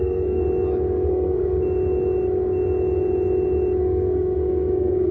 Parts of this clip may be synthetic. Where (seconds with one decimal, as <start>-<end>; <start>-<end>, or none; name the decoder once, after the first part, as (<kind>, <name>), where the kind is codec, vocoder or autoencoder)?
0.0-0.4 (codec, SNAC); 1.1-1.6; 3.8-5.1